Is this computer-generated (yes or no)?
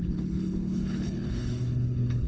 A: yes